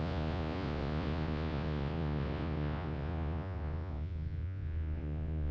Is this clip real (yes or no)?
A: no